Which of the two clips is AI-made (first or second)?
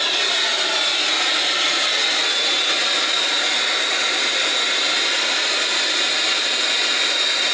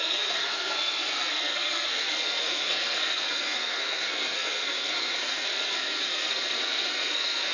second